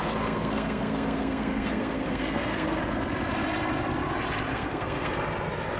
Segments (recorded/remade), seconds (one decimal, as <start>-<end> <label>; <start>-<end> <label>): 0.0-2.8 remade; 2.8-4.5 recorded; 4.5-5.1 remade; 5.1-5.8 recorded